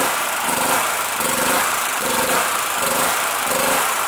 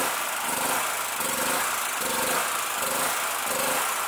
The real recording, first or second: second